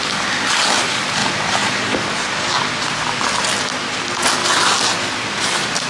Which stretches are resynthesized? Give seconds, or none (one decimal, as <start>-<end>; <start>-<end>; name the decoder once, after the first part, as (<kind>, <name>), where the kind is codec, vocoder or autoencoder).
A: none